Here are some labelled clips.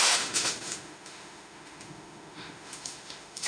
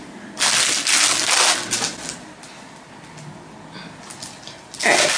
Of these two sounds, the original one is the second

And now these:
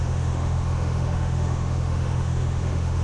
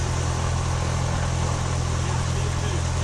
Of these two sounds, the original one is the second